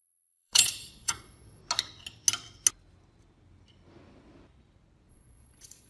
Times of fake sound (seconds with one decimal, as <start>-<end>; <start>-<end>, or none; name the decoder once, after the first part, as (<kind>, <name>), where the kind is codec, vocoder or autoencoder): 0.0-1.6 (vocoder, Vocos); 5.1-5.9